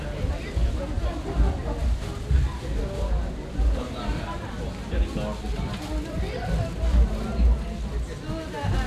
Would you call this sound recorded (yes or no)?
yes